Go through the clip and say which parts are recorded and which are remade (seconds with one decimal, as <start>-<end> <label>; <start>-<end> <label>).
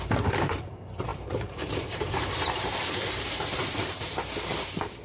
0.0-1.1 recorded; 1.1-4.0 remade; 4.0-5.0 recorded